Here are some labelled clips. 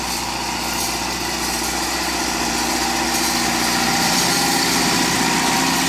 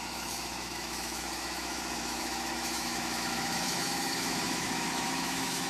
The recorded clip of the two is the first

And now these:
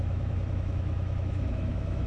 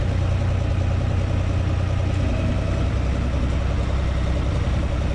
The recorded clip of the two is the second